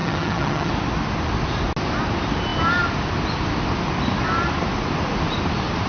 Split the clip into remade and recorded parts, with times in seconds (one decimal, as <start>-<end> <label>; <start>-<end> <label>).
0.0-0.7 remade; 0.7-5.9 recorded